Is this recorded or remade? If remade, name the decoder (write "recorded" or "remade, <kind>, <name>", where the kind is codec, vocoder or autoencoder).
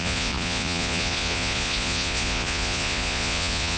remade, vocoder, Vocos